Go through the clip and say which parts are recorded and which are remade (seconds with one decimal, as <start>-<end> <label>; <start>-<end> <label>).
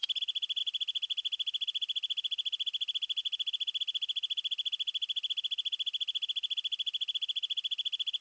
0.0-8.2 recorded